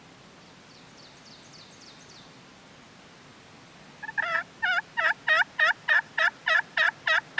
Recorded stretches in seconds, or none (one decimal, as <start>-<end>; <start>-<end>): 0.0-7.4

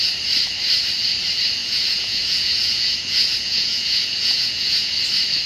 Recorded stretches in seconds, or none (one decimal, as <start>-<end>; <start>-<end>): 0.0-1.6; 4.9-5.5